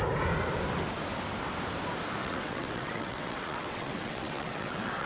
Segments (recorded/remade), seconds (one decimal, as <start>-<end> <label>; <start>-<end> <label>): 0.0-2.2 recorded; 2.2-5.1 remade